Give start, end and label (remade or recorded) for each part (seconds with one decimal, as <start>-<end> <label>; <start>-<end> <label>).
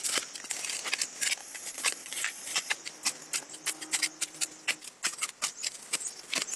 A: 0.0-1.4 recorded; 1.4-2.7 remade; 2.7-6.6 recorded